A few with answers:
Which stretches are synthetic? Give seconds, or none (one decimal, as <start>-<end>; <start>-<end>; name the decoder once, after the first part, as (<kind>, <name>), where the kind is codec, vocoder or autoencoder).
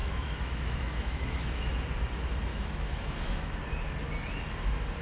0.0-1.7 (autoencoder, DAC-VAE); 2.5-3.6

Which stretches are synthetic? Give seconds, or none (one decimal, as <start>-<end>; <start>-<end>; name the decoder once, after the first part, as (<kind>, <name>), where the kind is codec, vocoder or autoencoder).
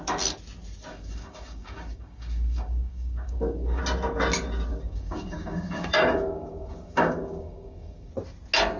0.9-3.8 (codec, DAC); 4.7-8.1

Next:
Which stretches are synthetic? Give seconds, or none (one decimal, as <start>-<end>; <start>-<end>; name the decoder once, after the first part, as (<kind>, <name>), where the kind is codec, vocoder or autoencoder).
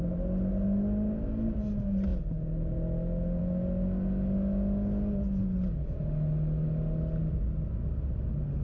none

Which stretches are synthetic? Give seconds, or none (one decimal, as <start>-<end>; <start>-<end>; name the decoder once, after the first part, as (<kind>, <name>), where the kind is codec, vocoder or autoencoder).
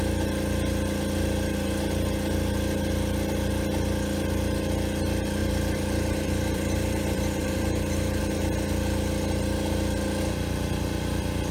5.4-8.2 (vocoder, BigVGAN v2)